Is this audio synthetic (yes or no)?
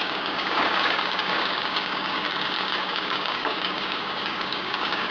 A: yes